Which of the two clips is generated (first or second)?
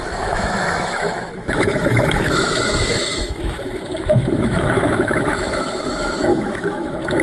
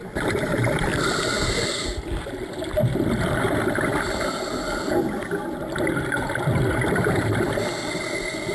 first